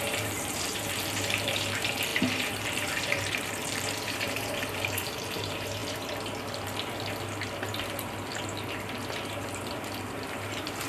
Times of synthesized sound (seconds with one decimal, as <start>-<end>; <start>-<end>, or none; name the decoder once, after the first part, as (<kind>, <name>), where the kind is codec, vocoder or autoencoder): 0.0-5.8 (vocoder, BigVGAN v2); 9.3-10.9

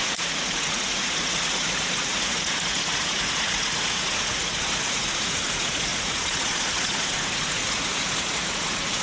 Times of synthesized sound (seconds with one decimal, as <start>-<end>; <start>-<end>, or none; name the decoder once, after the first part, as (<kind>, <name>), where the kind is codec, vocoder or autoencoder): 0.0-9.0 (vocoder, Vocos)

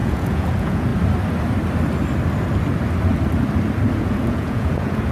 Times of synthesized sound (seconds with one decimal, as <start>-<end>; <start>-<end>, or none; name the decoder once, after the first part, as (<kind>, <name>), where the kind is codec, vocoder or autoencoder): 0.0-0.9 (vocoder, Vocos); 4.0-5.1

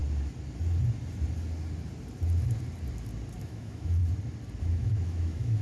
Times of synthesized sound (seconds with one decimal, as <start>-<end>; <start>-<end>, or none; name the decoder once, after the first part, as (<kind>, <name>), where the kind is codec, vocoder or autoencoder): 3.4-4.0 (autoencoder, DAC-VAE); 4.6-5.6

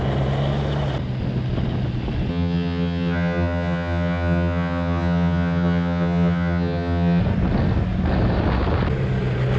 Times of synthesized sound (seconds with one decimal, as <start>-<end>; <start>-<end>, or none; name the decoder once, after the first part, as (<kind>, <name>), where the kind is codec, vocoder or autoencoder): 2.3-7.2 (vocoder, HiFi-GAN)

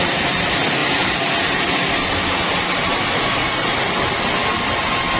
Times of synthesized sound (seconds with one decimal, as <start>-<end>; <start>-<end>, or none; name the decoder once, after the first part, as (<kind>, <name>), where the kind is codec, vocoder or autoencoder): none

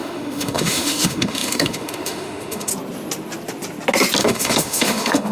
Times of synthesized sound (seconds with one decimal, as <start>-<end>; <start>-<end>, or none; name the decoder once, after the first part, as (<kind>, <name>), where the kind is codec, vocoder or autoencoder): 0.0-2.7 (autoencoder, DAC-VAE); 4.2-5.3

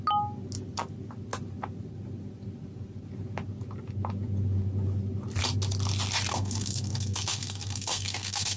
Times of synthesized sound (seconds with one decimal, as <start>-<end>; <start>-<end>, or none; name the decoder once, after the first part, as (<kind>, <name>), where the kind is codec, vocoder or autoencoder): 6.3-8.6 (codec, SNAC)